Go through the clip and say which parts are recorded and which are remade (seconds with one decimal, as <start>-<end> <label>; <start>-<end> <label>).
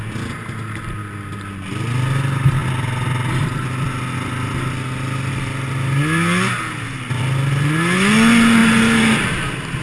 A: 0.0-8.6 recorded; 8.6-9.2 remade; 9.2-9.8 recorded